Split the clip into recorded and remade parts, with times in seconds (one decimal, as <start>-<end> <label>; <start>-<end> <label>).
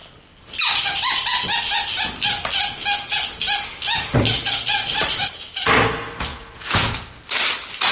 0.0-6.3 recorded; 6.3-7.1 remade; 7.1-7.9 recorded